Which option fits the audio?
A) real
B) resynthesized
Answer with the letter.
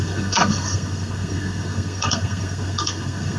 B